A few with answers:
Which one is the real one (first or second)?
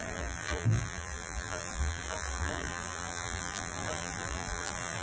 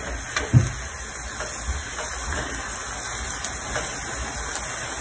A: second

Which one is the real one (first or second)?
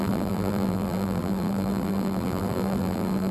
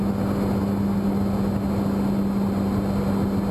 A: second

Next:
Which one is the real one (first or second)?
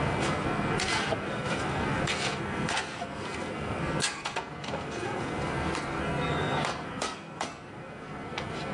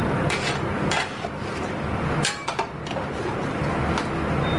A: second